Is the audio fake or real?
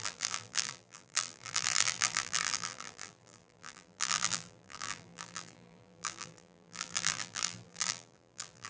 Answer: fake